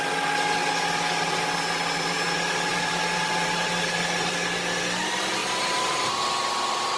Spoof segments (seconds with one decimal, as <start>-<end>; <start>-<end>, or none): 2.7-4.3; 5.4-6.2